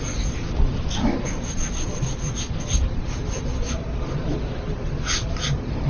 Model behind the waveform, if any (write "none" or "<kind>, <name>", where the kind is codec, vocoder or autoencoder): none